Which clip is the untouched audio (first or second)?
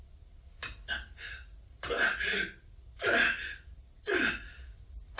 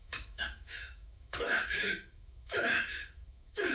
first